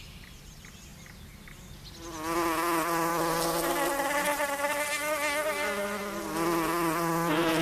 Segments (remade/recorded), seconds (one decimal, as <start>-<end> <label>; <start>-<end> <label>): 0.0-7.6 recorded